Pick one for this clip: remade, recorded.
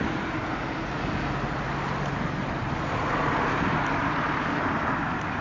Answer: recorded